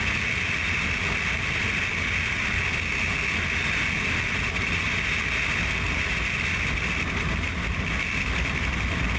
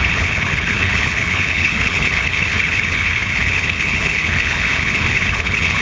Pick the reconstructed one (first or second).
second